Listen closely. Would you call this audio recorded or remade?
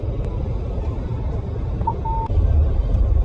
recorded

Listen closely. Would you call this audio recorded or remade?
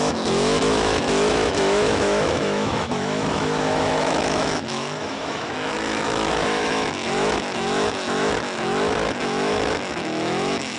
remade